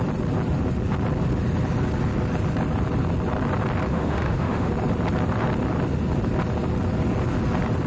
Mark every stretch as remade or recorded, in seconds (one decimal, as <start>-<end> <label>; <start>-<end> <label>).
0.0-3.9 recorded; 3.9-4.7 remade; 4.7-7.9 recorded

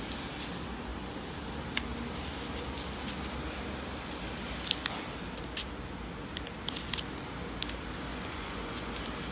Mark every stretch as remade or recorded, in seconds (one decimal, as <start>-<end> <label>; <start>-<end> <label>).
0.0-8.1 recorded; 8.1-8.9 remade; 8.9-9.3 recorded

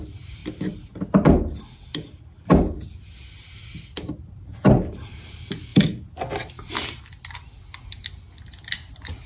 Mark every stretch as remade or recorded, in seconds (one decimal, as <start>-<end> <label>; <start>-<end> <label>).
0.0-0.4 remade; 0.4-4.2 recorded; 4.2-5.7 remade; 5.7-8.9 recorded; 8.9-9.3 remade

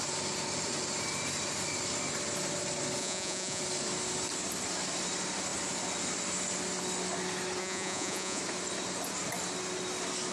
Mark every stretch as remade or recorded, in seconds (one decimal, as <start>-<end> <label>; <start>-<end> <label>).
0.0-3.0 recorded; 3.0-3.6 remade; 3.6-7.6 recorded; 7.6-8.4 remade; 8.4-10.3 recorded

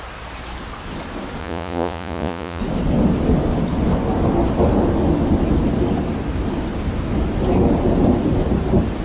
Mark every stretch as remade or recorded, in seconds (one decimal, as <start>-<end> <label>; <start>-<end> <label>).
0.0-1.4 recorded; 1.4-2.6 remade; 2.6-9.0 recorded

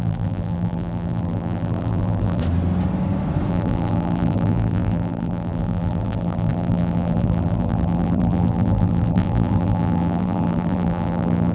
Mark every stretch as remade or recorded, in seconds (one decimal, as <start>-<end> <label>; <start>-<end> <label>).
0.0-2.4 remade; 2.4-3.5 recorded; 3.5-11.5 remade

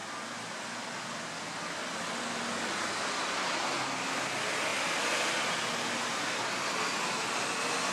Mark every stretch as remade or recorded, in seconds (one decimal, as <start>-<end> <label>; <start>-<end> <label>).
0.0-7.9 recorded

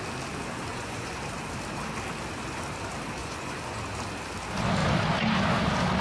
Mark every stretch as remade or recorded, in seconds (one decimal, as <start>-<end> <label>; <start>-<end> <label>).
0.0-0.7 recorded; 0.7-1.2 remade; 1.2-3.2 recorded; 3.2-3.8 remade; 3.8-6.0 recorded